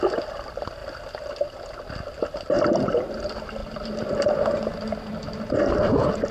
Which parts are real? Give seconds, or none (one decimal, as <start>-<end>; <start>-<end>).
0.0-6.3